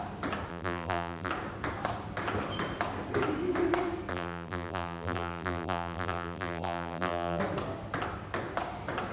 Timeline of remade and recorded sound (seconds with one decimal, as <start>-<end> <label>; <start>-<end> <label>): 0.0-0.5 recorded; 0.5-1.3 remade; 1.3-4.1 recorded; 4.1-7.4 remade; 7.4-9.1 recorded